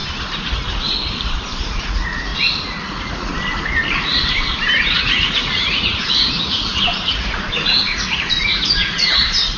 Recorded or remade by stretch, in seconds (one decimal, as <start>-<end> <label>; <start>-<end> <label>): 0.0-1.6 recorded; 1.6-2.3 remade; 2.3-2.9 recorded; 2.9-3.3 remade; 3.3-4.9 recorded; 4.9-9.6 remade